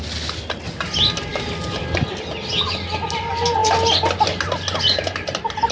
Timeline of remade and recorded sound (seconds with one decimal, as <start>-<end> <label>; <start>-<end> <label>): 0.0-5.7 recorded